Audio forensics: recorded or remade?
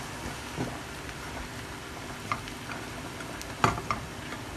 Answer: recorded